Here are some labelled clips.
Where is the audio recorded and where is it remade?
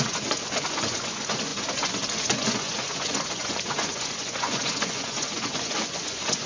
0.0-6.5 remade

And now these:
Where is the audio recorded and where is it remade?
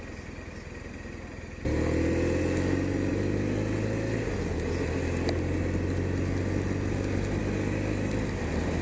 0.0-8.8 recorded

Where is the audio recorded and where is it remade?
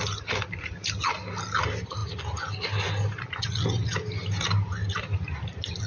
0.0-5.9 recorded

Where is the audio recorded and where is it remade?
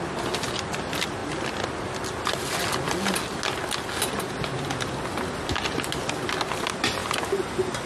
0.0-7.9 recorded